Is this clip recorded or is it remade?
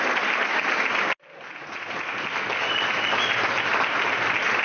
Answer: recorded